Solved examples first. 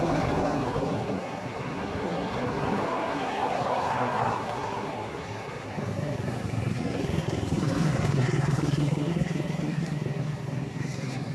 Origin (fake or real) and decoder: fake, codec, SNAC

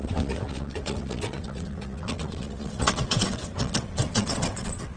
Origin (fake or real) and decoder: fake, vocoder, WaveNeXt